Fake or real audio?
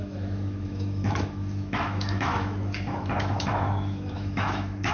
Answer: fake